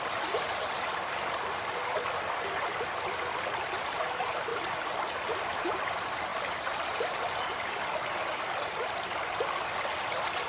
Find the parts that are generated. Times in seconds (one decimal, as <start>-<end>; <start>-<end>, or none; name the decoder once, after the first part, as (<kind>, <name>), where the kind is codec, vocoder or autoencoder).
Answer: none